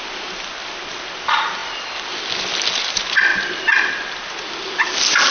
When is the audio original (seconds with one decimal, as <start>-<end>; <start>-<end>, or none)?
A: 0.0-5.3

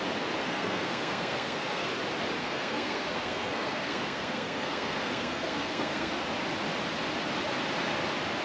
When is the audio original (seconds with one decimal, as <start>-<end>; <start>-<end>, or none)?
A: 0.0-0.4; 1.9-2.4; 6.1-8.4